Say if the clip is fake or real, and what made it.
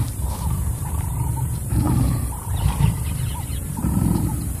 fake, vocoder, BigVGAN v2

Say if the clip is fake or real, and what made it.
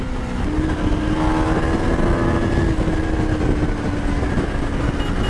real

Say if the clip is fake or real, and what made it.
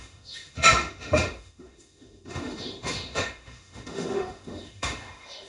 fake, autoencoder, DAC-VAE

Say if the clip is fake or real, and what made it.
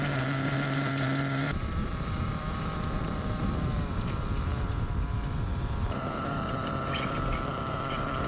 fake, vocoder, BigVGAN v2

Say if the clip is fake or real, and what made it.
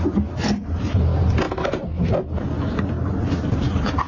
real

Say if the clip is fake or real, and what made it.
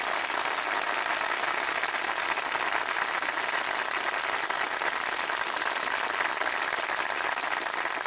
real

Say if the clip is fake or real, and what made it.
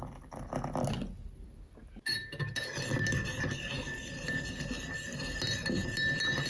real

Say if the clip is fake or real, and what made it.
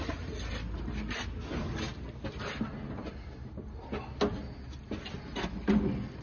real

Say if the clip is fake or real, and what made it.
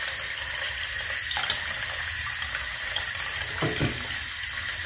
real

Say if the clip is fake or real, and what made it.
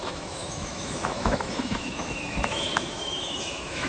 fake, autoencoder, DAC-VAE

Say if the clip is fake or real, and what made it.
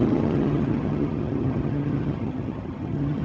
fake, vocoder, HiFi-GAN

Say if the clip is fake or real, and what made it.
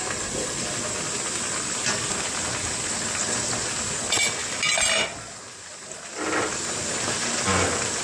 real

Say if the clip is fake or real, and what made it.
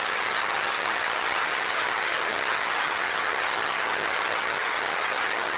fake, vocoder, HiFi-GAN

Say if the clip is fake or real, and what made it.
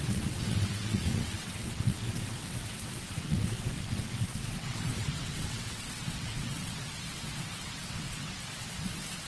fake, vocoder, WaveNeXt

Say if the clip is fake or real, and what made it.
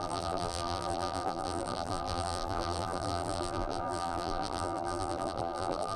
fake, vocoder, BigVGAN v2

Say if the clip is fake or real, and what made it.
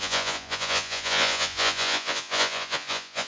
fake, vocoder, Vocos